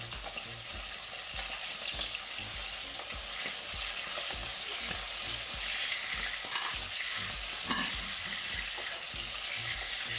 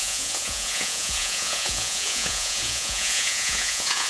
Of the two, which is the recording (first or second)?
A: first